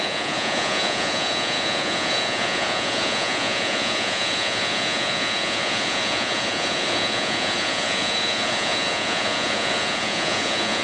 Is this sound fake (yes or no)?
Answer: yes